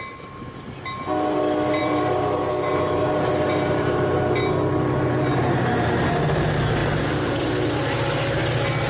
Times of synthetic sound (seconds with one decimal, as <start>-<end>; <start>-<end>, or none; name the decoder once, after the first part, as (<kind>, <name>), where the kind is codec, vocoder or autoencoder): 1.8-5.9 (vocoder, BigVGAN v2); 6.8-7.5